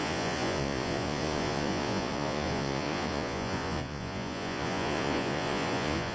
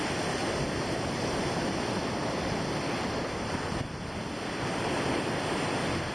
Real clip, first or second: second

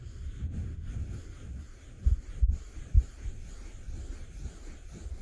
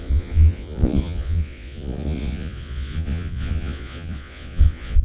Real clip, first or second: first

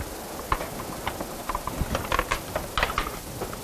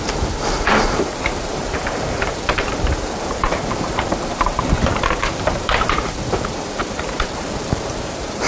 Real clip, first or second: first